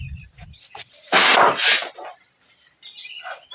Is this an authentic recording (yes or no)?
yes